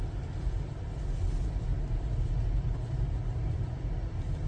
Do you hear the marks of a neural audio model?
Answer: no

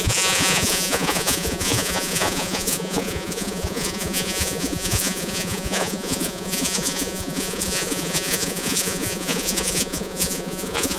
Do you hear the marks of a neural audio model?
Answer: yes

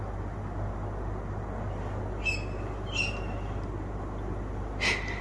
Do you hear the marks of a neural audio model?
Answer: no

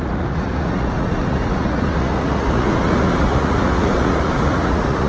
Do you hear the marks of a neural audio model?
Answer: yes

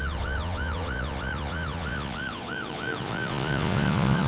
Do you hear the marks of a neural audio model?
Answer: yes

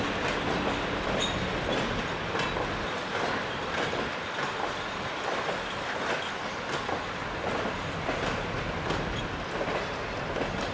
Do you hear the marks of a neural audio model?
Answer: no